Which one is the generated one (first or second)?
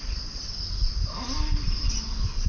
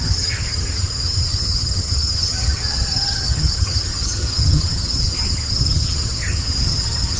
second